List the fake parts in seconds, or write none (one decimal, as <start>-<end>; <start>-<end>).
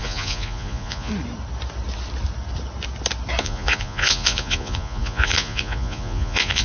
0.0-1.1; 3.4-6.6